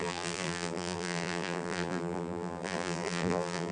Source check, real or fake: fake